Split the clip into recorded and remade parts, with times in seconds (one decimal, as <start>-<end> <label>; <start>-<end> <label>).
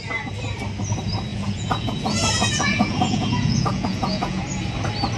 0.0-1.3 recorded; 1.3-4.4 remade; 4.4-5.2 recorded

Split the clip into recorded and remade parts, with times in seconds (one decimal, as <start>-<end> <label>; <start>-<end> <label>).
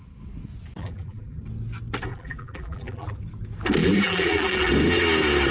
0.0-0.8 recorded; 0.8-1.4 remade; 1.4-2.1 recorded; 2.1-3.2 remade; 3.2-3.8 recorded; 3.8-4.7 remade; 4.7-5.5 recorded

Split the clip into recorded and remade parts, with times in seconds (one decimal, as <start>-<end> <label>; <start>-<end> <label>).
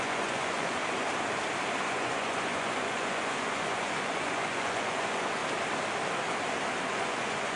0.0-0.8 remade; 0.8-1.8 recorded; 1.8-5.4 remade; 5.4-6.8 recorded; 6.8-7.6 remade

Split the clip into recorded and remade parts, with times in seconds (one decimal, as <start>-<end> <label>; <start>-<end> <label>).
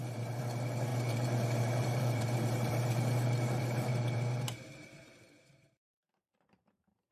0.0-7.1 remade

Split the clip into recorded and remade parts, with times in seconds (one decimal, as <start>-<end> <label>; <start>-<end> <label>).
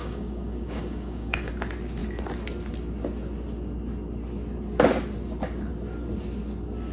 0.0-1.5 remade; 1.5-6.9 recorded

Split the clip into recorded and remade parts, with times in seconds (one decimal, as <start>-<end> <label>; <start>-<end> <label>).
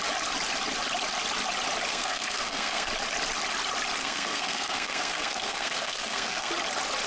0.0-1.9 recorded; 1.9-2.9 remade; 2.9-4.0 recorded; 4.0-6.5 remade; 6.5-7.1 recorded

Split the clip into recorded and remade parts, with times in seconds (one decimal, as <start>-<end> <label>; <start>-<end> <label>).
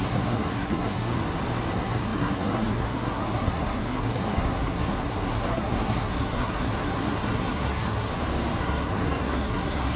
0.0-1.1 remade; 1.1-1.7 recorded; 1.7-8.1 remade; 8.1-8.6 recorded; 8.6-10.0 remade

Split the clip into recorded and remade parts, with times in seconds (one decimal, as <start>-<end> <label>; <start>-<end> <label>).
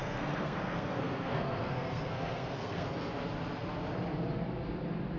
0.0-3.1 remade; 3.1-5.2 recorded